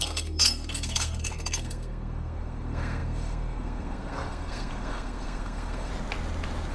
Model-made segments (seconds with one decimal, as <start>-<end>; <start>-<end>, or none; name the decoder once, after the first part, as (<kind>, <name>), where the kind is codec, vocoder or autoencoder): 0.0-5.9 (codec, SNAC)